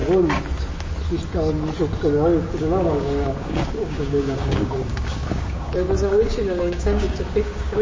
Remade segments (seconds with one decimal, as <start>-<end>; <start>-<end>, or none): 2.6-7.8